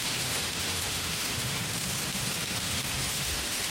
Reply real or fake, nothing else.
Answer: fake